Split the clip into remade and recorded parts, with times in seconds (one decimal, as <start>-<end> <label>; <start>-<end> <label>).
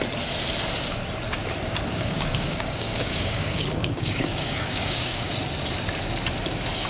0.0-1.9 recorded; 1.9-5.3 remade; 5.3-6.9 recorded